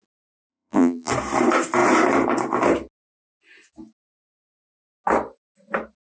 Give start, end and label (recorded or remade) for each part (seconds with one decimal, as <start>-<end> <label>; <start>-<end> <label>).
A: 0.0-0.5 recorded; 0.5-1.1 remade; 1.1-6.2 recorded